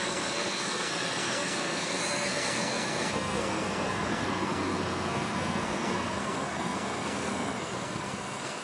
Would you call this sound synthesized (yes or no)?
yes